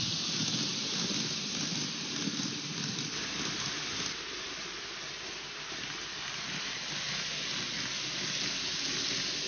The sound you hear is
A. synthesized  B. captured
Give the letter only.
B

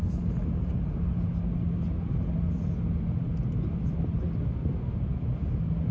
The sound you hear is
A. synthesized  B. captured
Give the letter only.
B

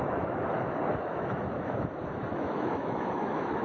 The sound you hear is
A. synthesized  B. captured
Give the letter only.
A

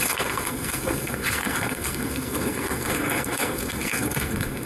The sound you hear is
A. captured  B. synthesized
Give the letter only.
B